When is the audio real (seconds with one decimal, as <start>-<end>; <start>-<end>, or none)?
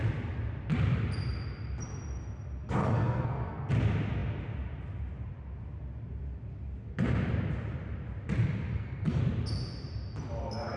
0.0-2.8; 3.7-8.7; 9.2-10.8